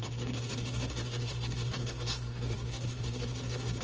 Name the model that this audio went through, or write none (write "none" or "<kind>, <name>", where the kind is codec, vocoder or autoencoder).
codec, SNAC